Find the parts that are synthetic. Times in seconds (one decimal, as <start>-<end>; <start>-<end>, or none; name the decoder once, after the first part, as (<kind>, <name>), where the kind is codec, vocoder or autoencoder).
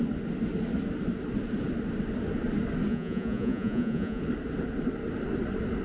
2.9-4.2 (vocoder, Vocos)